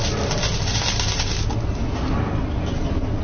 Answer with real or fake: real